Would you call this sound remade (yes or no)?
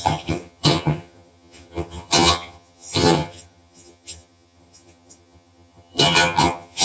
yes